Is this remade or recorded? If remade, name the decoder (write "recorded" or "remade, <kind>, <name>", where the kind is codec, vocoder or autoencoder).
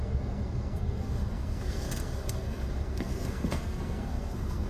remade, codec, SNAC